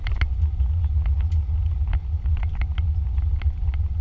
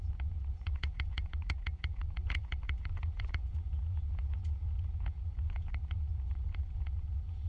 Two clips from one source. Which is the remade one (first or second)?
second